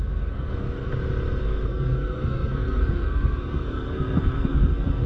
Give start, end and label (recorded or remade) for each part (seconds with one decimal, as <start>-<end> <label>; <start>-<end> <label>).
0.0-0.9 remade; 0.9-1.4 recorded; 1.4-5.1 remade